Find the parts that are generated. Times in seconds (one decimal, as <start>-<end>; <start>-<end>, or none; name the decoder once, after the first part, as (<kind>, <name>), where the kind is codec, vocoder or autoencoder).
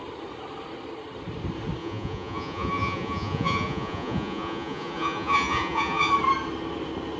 1.8-6.1 (vocoder, Vocos)